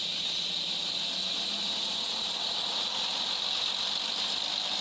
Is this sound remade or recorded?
recorded